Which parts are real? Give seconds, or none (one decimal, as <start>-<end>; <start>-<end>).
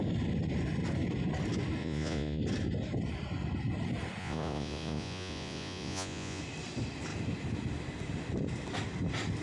0.0-1.8; 2.4-4.2; 6.4-9.4